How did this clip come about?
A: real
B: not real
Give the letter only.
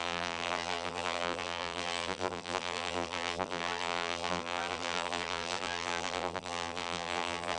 B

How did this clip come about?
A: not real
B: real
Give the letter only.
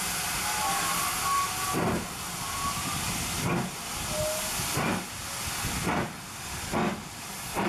B